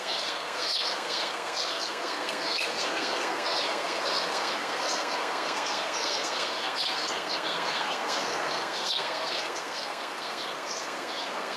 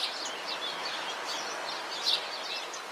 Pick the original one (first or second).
second